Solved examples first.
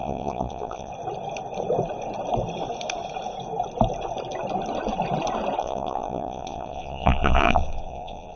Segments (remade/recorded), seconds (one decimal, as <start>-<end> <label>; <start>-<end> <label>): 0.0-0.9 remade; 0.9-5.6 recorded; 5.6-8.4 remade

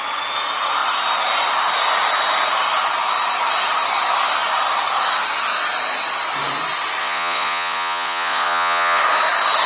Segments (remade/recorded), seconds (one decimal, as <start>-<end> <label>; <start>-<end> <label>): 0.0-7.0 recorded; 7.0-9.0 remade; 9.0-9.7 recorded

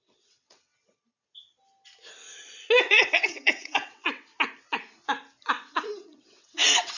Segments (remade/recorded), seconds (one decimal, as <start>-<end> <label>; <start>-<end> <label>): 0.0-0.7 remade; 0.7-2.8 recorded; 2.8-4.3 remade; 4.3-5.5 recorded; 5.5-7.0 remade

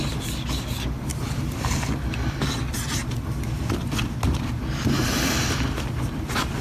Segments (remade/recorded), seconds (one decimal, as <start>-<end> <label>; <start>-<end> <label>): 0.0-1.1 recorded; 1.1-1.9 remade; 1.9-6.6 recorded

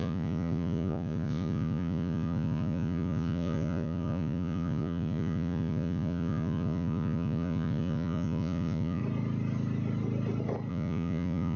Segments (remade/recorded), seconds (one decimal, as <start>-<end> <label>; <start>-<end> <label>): 0.0-9.0 remade; 9.0-10.7 recorded; 10.7-11.6 remade